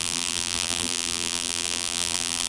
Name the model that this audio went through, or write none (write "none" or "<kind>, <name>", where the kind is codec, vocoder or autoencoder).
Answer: vocoder, BigVGAN v2